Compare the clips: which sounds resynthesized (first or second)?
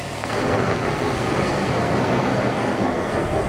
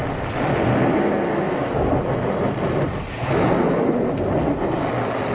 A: first